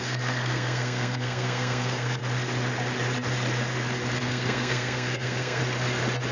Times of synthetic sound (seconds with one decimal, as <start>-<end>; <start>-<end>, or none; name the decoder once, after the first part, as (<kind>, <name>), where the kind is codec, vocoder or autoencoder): 0.0-2.2 (codec, SNAC); 4.2-5.6